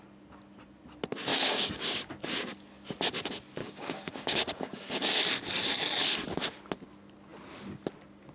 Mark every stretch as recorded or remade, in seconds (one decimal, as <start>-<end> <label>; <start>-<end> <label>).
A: 0.0-1.3 recorded; 1.3-2.1 remade; 2.1-3.6 recorded; 3.6-5.2 remade; 5.2-8.3 recorded